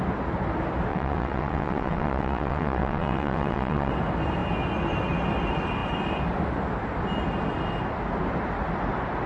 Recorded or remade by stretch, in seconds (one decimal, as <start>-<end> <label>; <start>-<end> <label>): 0.0-0.9 recorded; 0.9-3.9 remade; 3.9-9.3 recorded